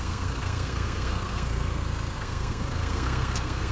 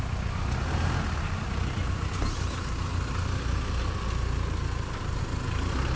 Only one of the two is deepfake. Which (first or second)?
first